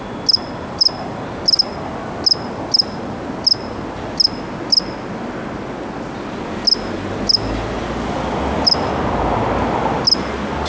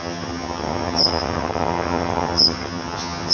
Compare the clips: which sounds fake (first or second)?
second